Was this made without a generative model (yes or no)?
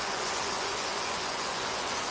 no